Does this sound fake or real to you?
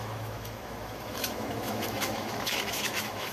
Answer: fake